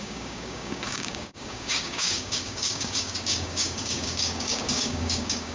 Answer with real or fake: fake